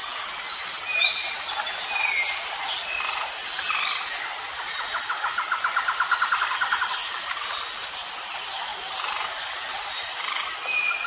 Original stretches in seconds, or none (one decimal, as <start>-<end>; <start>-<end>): 0.0-11.1